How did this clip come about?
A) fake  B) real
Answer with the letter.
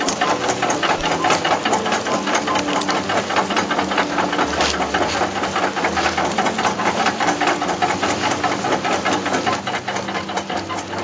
B